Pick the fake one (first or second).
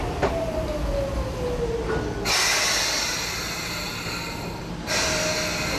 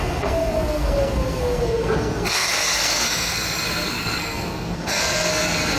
second